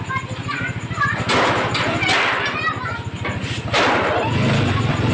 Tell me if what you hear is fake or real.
real